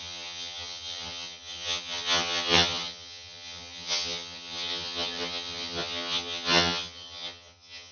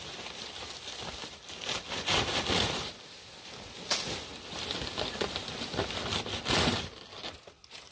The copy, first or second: first